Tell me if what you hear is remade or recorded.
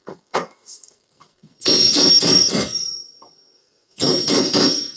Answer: remade